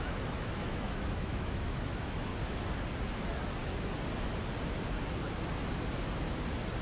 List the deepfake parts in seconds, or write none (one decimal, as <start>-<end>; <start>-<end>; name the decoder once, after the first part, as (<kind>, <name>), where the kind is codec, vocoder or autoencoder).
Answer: 0.0-2.3 (autoencoder, DAC-VAE)